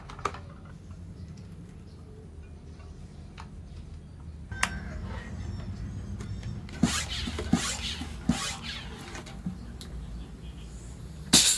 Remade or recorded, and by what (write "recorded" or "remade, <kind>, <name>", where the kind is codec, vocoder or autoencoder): recorded